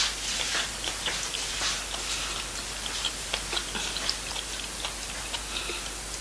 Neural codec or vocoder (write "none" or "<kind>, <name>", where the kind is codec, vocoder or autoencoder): none